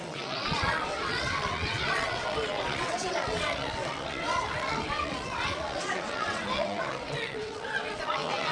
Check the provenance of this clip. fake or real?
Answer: fake